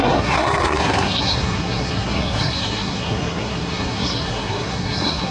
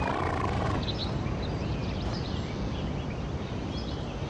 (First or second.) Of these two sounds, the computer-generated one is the first